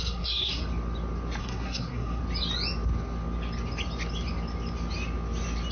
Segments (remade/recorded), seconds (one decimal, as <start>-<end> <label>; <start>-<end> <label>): 0.0-0.6 remade; 0.6-1.4 recorded; 1.4-2.2 remade; 2.2-5.7 recorded

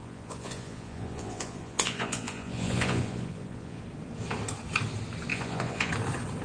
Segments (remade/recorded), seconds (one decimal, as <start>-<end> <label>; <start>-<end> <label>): 0.0-3.8 remade; 3.8-5.3 recorded; 5.3-5.9 remade; 5.9-6.4 recorded

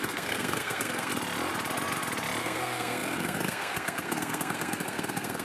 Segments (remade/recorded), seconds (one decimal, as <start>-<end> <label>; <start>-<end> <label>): 0.0-1.1 remade; 1.1-2.4 recorded; 2.4-5.4 remade

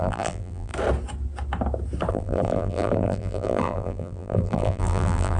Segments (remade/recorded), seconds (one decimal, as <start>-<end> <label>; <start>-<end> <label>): 0.0-0.7 remade; 0.7-2.1 recorded; 2.1-5.4 remade

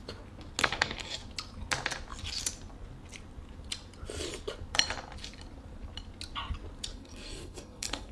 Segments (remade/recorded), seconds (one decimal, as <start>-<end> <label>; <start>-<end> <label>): 0.0-0.6 recorded; 0.6-1.2 remade; 1.2-6.9 recorded; 6.9-8.1 remade

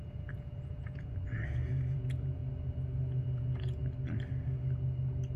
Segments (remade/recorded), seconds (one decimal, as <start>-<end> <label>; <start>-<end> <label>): 0.0-1.2 remade; 1.2-1.7 recorded; 1.7-2.4 remade; 2.4-3.2 recorded; 3.2-3.8 remade; 3.8-5.4 recorded